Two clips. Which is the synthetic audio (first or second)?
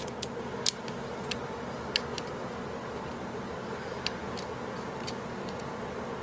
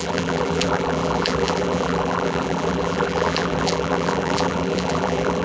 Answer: second